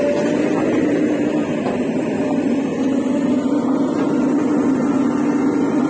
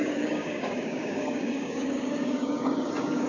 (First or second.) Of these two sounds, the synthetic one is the second